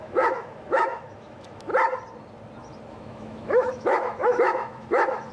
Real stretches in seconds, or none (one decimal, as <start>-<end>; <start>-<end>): 1.7-2.9